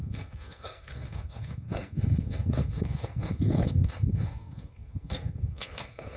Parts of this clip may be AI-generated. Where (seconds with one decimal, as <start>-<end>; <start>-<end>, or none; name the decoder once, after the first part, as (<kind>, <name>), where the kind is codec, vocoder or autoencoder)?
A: 0.0-6.2 (codec, SNAC)